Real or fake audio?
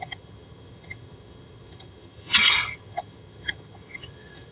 fake